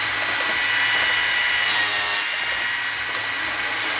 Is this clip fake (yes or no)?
no